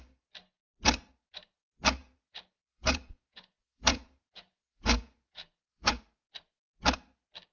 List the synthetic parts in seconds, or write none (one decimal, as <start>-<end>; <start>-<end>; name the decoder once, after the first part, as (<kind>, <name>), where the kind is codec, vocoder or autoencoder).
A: 2.0-6.0 (vocoder, Vocos)